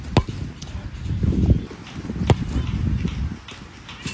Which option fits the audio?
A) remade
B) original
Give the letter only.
B